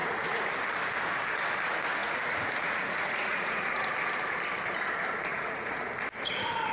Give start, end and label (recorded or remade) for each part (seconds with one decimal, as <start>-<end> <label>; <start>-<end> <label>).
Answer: 0.0-0.5 remade; 0.5-2.0 recorded; 2.0-3.9 remade; 3.9-5.3 recorded; 5.3-5.9 remade; 5.9-6.7 recorded